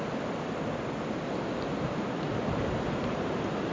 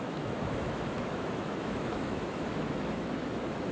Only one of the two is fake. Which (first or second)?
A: second